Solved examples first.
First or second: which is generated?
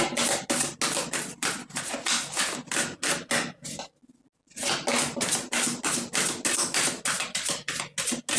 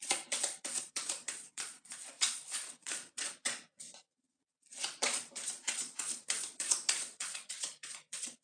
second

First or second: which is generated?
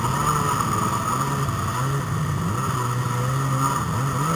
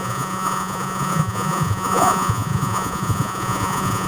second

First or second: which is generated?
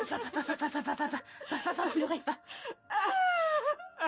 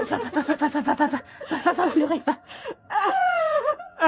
second